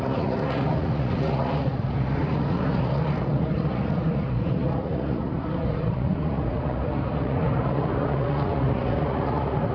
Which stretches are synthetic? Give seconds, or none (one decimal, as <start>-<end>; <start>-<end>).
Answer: 0.0-9.7